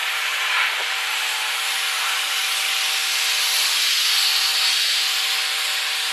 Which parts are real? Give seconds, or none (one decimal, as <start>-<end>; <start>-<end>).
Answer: 2.4-4.9